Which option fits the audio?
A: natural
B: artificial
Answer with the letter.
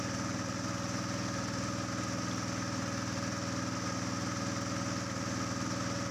A